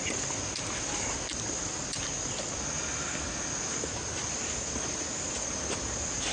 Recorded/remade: recorded